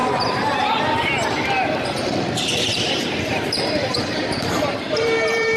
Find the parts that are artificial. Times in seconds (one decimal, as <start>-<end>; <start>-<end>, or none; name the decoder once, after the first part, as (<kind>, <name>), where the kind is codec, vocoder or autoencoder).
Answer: 0.0-5.6 (vocoder, BigVGAN v2)